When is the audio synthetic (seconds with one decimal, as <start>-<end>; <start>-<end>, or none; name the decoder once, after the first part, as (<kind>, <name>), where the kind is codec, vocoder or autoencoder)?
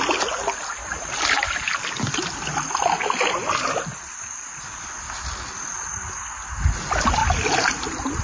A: none